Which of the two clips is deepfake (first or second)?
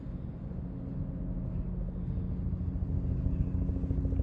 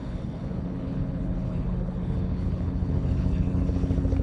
second